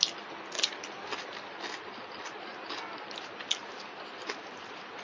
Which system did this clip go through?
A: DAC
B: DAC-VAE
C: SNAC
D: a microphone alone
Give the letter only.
D